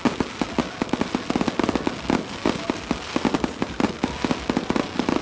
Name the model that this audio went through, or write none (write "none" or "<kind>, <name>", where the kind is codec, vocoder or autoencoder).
none